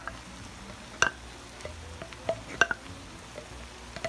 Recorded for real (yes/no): yes